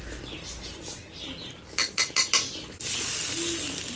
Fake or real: real